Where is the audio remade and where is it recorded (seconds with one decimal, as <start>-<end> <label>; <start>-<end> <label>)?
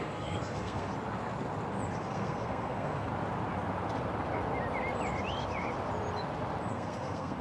0.0-0.9 remade; 0.9-2.0 recorded; 2.0-3.1 remade; 3.1-6.7 recorded; 6.7-7.4 remade